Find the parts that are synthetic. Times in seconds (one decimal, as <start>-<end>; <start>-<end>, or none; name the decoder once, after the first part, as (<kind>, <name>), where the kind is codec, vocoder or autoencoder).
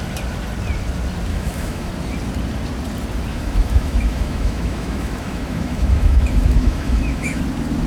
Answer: 1.3-1.9 (autoencoder, DAC-VAE); 3.3-7.4